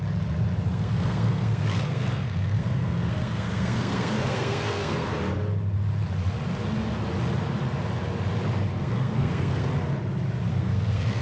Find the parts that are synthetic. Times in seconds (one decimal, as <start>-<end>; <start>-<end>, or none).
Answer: 0.7-5.1; 8.8-9.7; 10.5-11.2